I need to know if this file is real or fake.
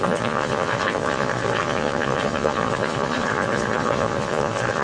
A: fake